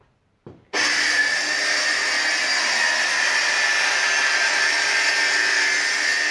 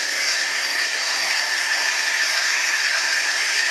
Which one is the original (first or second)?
first